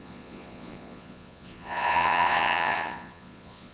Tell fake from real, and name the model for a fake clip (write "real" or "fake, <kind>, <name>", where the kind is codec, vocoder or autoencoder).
fake, vocoder, Vocos